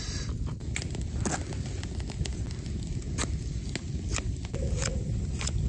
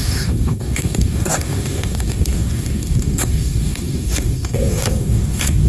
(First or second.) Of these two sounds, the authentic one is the first